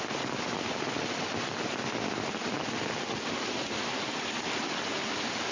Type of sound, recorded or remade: recorded